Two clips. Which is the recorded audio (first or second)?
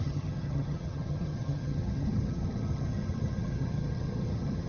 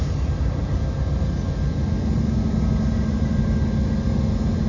second